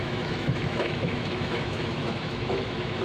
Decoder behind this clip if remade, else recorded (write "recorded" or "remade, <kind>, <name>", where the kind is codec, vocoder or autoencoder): remade, autoencoder, DAC-VAE